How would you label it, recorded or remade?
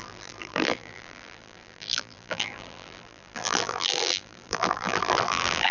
remade